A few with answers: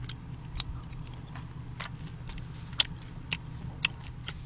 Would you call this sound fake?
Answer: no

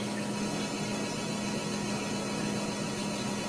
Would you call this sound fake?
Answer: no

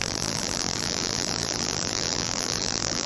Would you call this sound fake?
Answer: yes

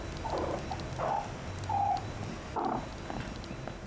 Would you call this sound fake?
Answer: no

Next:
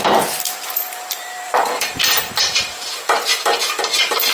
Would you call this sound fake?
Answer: yes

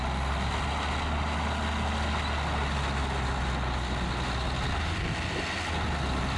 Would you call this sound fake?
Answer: no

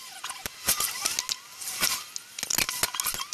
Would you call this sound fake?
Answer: no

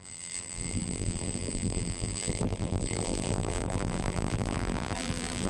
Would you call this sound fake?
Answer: yes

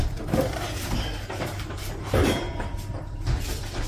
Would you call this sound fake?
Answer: yes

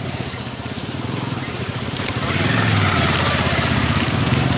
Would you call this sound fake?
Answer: yes